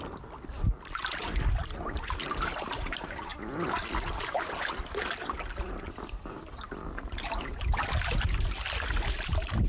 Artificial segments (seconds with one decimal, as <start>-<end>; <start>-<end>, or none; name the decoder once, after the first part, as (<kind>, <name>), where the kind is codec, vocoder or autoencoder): none